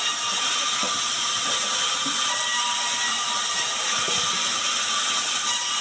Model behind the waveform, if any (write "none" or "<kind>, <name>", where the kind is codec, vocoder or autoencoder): none